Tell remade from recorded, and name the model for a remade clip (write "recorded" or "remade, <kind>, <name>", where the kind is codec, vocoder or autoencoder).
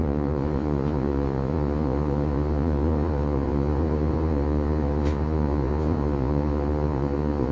remade, vocoder, Vocos